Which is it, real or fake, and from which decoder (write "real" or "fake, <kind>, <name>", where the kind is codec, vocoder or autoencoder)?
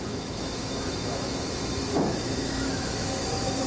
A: fake, autoencoder, DAC-VAE